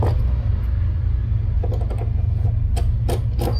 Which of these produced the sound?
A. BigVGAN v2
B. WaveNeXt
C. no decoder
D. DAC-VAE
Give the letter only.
C